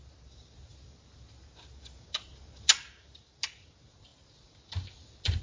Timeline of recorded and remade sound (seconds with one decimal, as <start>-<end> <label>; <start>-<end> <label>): 0.0-5.4 recorded